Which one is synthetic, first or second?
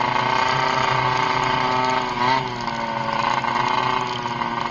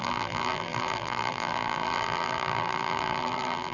second